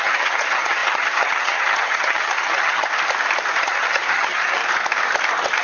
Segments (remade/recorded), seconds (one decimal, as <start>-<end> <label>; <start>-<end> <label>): 0.0-2.8 remade; 2.8-3.6 recorded; 3.6-4.6 remade; 4.6-5.6 recorded